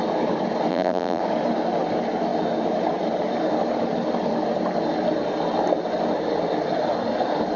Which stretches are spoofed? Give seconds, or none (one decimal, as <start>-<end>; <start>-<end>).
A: 0.7-1.2

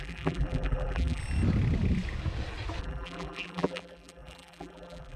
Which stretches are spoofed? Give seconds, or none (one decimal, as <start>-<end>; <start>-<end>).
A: 0.0-1.2; 2.8-5.2

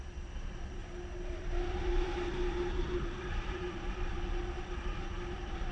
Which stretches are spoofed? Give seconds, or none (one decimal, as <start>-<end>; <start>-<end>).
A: 0.0-0.8; 1.4-5.7

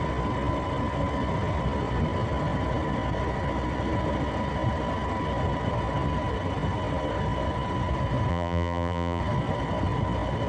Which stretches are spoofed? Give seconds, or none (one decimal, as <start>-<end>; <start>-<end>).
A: 8.3-9.2

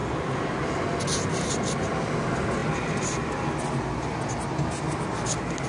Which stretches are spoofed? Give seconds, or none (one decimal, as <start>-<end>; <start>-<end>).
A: none

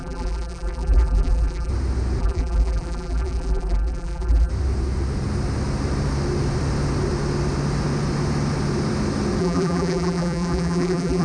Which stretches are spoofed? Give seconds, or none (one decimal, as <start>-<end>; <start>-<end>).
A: 0.0-1.7; 2.2-4.5; 9.4-11.2

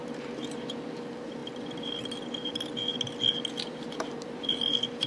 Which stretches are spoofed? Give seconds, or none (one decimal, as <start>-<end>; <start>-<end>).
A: 0.0-2.9; 3.6-5.1